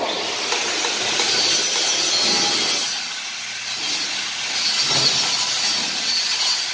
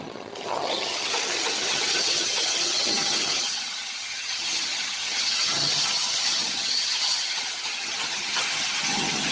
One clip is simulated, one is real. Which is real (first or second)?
first